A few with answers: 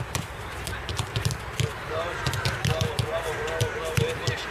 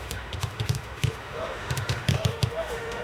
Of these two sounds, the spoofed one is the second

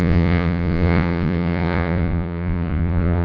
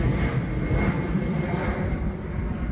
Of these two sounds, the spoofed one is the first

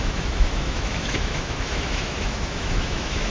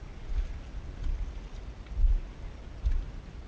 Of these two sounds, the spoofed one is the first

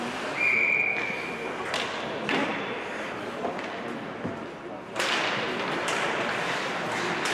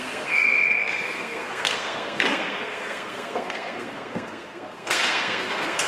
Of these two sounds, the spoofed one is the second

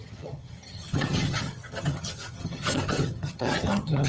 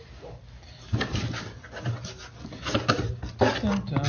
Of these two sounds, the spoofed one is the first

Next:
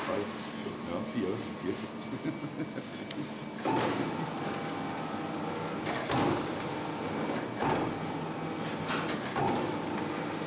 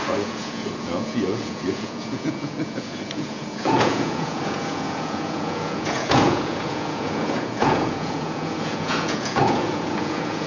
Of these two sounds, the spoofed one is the second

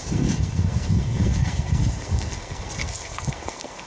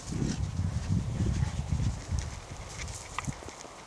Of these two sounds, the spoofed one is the first